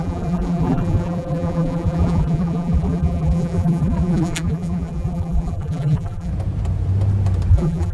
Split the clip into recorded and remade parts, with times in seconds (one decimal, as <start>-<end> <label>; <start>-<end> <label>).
0.0-6.3 remade; 6.3-7.5 recorded; 7.5-7.9 remade

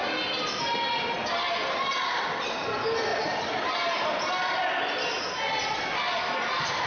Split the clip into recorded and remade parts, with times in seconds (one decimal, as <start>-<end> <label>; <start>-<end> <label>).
0.0-6.9 recorded

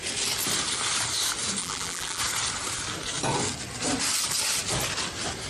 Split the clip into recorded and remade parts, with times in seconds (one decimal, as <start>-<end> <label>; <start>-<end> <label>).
0.0-1.6 recorded; 1.6-2.2 remade; 2.2-5.5 recorded

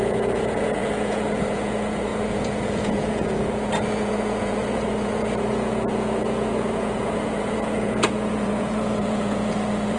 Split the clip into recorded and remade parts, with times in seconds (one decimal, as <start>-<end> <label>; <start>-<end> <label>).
0.0-10.0 remade

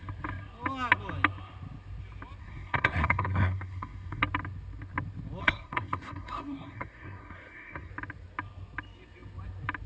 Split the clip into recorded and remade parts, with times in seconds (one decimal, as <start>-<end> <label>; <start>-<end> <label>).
0.0-2.4 recorded; 2.4-4.2 remade; 4.2-5.4 recorded; 5.4-7.9 remade; 7.9-9.9 recorded

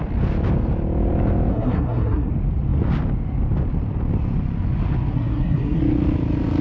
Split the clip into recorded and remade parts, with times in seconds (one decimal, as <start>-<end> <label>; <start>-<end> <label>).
0.0-1.5 recorded; 1.5-2.3 remade; 2.3-5.1 recorded; 5.1-5.8 remade; 5.8-6.6 recorded